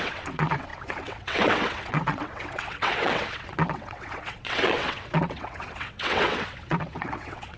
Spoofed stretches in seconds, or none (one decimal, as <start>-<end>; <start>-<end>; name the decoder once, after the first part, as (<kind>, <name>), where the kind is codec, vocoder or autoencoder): 0.0-7.6 (vocoder, WaveNeXt)